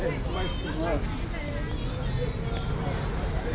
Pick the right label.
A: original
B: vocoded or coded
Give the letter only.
A